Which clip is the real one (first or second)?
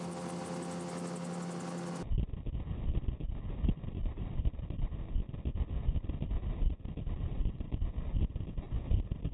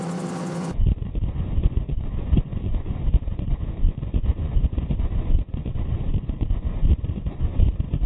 first